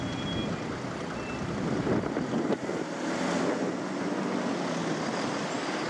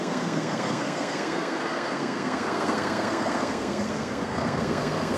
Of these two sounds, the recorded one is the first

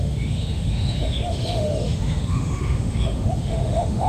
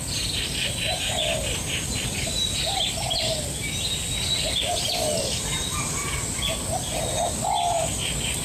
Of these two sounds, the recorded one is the second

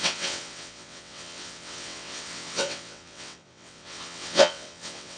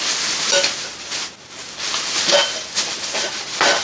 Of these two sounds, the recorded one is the second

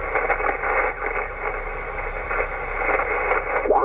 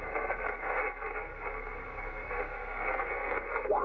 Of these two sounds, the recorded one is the first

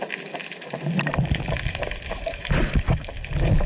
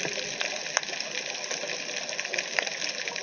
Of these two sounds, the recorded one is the second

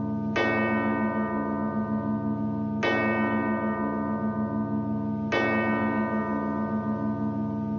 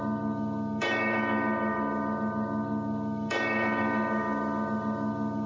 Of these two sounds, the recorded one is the first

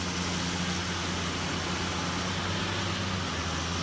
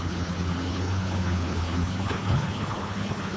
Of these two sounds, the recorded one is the first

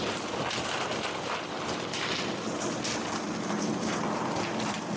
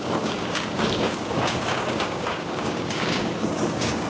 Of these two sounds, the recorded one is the first